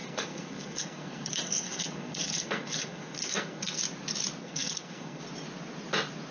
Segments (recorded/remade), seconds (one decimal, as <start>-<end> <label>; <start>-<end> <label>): 0.0-3.8 remade; 3.8-4.4 recorded; 4.4-5.2 remade; 5.2-6.3 recorded

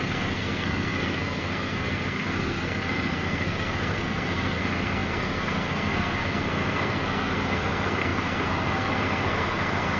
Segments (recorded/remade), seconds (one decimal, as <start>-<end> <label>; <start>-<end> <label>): 0.0-10.0 remade

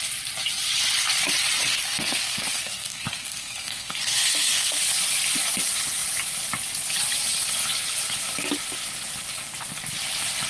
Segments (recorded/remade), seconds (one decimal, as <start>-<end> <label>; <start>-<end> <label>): 0.0-1.7 recorded; 1.7-4.8 remade; 4.8-10.5 recorded

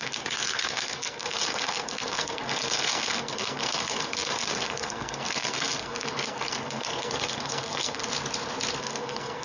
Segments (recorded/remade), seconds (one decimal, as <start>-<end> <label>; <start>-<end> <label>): 0.0-8.0 remade; 8.0-8.8 recorded; 8.8-9.4 remade

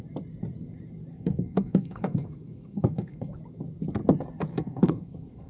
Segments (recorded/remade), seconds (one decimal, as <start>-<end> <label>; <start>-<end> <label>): 0.0-1.1 recorded; 1.1-3.4 remade; 3.4-4.5 recorded; 4.5-5.5 remade

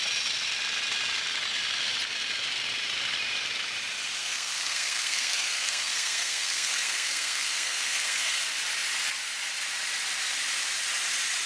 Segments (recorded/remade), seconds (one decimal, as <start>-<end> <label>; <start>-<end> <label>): 0.0-4.2 recorded; 4.2-8.4 remade; 8.4-11.5 recorded

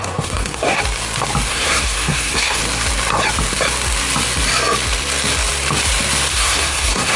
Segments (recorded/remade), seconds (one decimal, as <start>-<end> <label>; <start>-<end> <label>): 0.0-0.8 remade; 0.8-1.5 recorded; 1.5-2.6 remade; 2.6-6.3 recorded; 6.3-7.2 remade